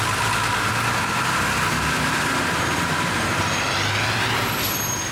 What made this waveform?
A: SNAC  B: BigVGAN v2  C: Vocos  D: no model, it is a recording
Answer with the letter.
D